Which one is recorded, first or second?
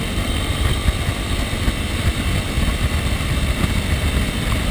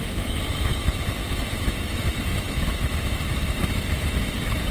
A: first